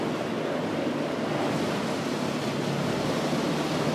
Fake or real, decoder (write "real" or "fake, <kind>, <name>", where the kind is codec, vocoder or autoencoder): real